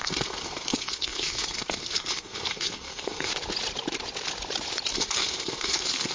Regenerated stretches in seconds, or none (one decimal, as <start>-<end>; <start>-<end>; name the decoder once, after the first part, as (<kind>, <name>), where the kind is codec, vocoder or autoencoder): 0.0-3.3 (codec, SNAC); 4.9-6.1